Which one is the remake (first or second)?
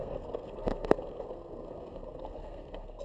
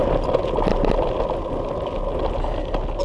first